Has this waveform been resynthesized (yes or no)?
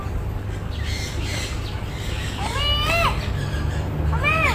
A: no